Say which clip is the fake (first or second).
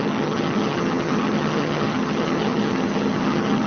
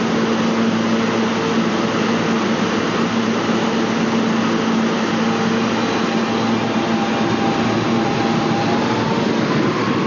first